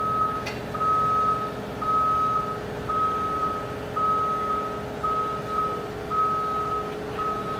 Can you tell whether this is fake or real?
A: real